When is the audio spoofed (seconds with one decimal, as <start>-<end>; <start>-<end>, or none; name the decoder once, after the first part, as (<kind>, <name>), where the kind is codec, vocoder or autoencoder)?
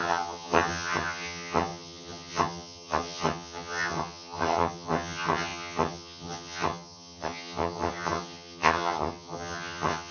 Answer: 0.0-10.1 (vocoder, HiFi-GAN)